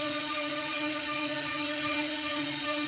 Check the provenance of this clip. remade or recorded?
remade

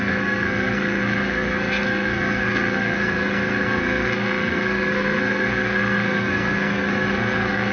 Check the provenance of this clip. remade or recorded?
remade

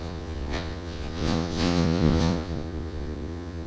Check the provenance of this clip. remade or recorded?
remade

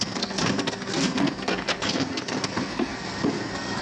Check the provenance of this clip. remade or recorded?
remade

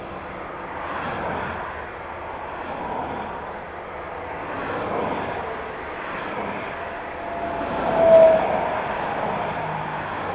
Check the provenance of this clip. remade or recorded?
recorded